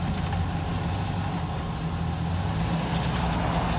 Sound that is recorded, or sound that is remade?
recorded